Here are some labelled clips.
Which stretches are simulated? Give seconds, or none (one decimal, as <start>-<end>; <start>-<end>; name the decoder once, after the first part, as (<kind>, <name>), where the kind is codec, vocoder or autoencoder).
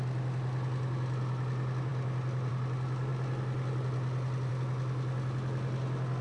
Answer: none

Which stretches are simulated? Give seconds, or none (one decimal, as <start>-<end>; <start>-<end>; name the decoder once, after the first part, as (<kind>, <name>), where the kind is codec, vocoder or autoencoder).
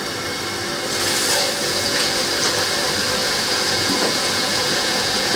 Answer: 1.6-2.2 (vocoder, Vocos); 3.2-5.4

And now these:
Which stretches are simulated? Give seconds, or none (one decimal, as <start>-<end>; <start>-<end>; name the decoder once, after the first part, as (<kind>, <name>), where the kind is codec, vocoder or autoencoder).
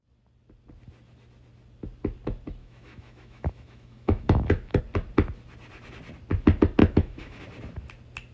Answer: 2.6-4.8 (autoencoder, DAC-VAE); 6.8-7.4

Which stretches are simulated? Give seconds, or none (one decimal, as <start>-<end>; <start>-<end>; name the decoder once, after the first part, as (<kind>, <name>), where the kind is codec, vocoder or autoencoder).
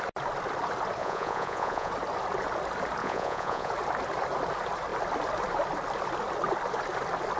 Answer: 1.0-1.9 (vocoder, Vocos); 3.0-3.7